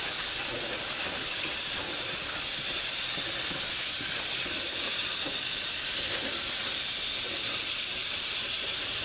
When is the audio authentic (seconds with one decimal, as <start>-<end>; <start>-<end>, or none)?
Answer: 0.0-6.3; 6.8-9.0